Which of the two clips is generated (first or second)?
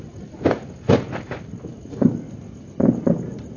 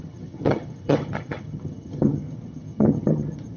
second